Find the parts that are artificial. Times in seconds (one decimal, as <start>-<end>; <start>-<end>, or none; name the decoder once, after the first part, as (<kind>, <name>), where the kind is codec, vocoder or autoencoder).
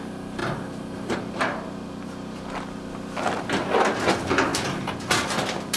none